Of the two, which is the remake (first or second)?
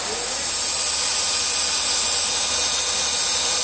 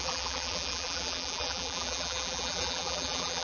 second